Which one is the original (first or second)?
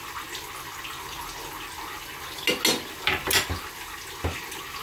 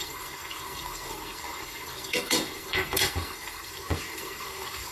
first